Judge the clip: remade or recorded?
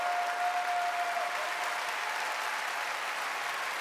recorded